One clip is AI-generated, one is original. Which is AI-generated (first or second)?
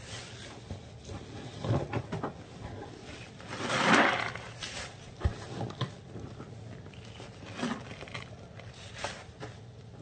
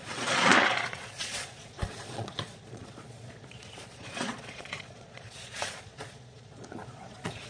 second